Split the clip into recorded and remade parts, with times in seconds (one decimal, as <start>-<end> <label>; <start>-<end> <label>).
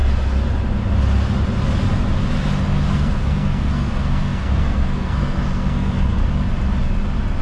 0.0-2.9 recorded; 2.9-6.2 remade; 6.2-7.4 recorded